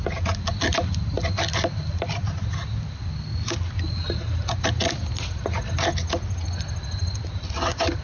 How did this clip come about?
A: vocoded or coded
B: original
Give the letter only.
B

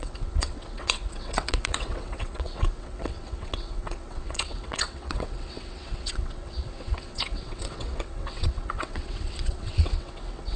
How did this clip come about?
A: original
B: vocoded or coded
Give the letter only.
B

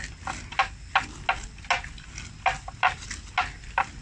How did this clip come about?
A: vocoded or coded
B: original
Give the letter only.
B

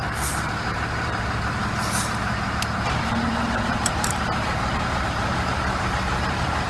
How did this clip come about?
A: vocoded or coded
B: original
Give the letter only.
A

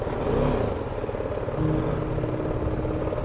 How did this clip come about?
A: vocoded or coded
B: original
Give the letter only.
B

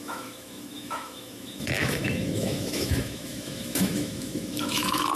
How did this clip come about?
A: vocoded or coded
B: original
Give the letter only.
A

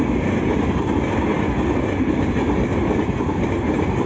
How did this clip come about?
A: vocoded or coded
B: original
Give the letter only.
B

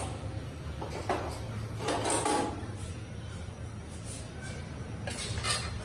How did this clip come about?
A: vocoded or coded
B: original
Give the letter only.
B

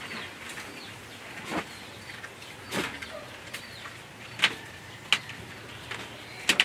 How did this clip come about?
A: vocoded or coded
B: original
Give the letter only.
B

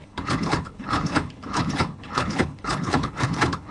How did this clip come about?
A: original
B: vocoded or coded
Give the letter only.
B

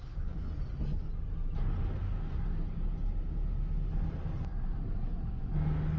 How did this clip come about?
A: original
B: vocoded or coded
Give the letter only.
A